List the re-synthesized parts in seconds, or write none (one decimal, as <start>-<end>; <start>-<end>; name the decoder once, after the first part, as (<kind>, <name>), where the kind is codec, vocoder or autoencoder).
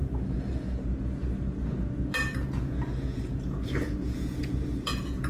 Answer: 0.0-5.3 (vocoder, Vocos)